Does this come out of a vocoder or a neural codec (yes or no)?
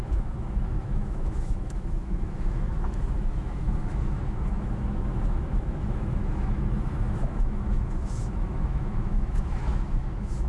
yes